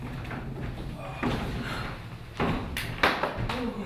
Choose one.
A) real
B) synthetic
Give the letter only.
A